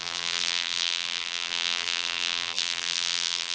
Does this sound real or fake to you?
fake